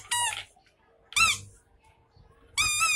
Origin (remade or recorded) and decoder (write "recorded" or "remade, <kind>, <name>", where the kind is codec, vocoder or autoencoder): recorded